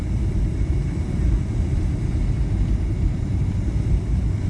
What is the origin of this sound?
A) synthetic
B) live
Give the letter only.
B